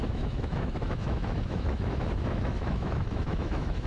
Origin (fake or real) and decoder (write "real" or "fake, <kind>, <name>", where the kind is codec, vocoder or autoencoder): fake, autoencoder, DAC-VAE